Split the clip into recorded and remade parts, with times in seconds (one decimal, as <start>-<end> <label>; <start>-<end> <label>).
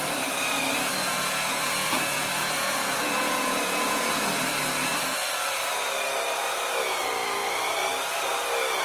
0.0-1.0 recorded; 1.0-4.2 remade; 4.2-8.8 recorded